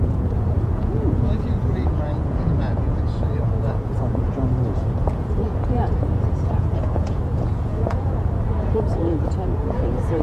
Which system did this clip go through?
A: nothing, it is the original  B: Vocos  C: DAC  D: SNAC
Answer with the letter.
B